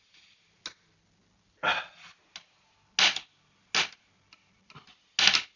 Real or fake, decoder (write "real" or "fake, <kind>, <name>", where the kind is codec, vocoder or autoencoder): real